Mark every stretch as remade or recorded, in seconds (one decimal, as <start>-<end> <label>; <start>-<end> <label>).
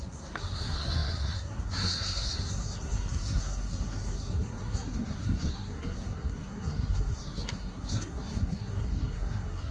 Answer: 0.0-9.7 remade